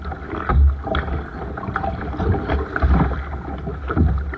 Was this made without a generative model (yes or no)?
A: yes